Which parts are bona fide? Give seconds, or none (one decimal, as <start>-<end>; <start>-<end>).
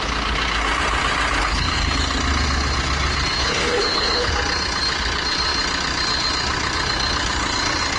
0.0-1.4; 1.9-3.4; 4.3-8.0